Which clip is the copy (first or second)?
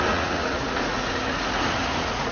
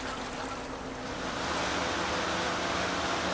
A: first